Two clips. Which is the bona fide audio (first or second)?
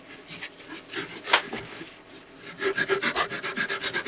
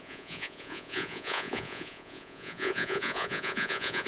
first